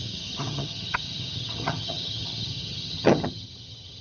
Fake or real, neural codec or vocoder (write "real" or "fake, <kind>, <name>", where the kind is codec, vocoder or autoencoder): fake, vocoder, HiFi-GAN